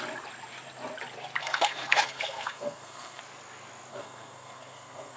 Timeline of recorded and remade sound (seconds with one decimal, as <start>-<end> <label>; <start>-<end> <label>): 0.0-1.4 recorded; 1.4-3.2 remade; 3.2-3.9 recorded; 3.9-5.2 remade

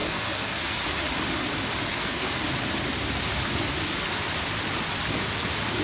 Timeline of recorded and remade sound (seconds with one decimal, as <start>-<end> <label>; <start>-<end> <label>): 0.0-0.8 remade; 0.8-1.9 recorded; 1.9-2.4 remade; 2.4-5.8 recorded

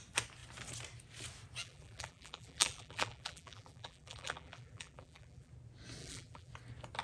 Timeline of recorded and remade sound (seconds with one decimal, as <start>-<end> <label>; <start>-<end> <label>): 0.0-1.6 recorded; 1.6-5.5 remade; 5.5-6.0 recorded; 6.0-6.5 remade; 6.5-7.0 recorded

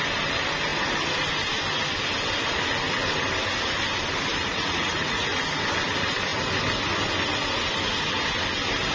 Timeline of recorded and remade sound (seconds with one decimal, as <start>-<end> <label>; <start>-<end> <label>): 0.0-4.4 recorded; 4.4-5.3 remade; 5.3-8.9 recorded